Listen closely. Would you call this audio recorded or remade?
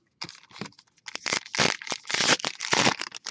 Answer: recorded